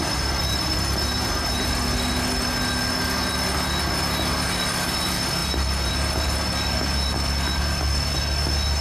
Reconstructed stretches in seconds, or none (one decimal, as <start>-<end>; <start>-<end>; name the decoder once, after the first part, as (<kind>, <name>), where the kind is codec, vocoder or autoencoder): none